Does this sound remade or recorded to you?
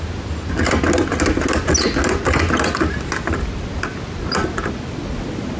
recorded